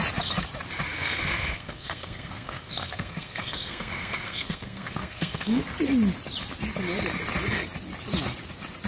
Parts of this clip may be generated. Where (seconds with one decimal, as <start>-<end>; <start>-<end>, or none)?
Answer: 0.9-5.6

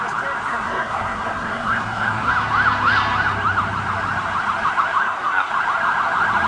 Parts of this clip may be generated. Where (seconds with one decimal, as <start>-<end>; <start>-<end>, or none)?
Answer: 0.5-2.3; 5.0-5.5

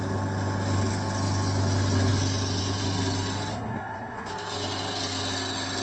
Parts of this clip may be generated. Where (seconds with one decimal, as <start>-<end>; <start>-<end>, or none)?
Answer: 3.5-4.3

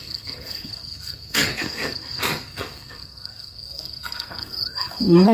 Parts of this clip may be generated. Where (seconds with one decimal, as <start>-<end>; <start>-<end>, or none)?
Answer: 0.0-5.3

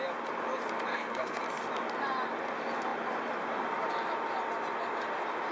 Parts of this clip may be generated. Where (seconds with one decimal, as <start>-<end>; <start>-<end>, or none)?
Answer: 0.9-1.4

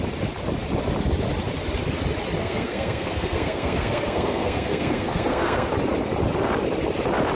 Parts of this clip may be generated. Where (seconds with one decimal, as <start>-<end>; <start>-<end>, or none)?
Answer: 2.4-5.7

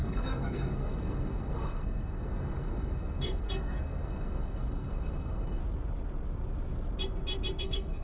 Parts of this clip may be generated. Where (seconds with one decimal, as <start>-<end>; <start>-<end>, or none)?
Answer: 0.0-5.6; 7.6-8.0

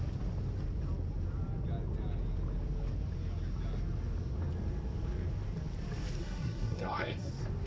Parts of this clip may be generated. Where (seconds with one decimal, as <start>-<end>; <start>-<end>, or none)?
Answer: 6.2-7.3